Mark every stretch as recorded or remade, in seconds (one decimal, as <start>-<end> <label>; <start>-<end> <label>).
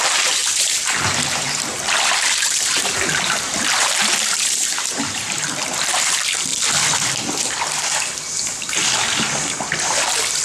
0.0-6.5 remade; 6.5-10.4 recorded